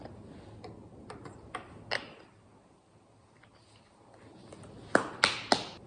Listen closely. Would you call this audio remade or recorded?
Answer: recorded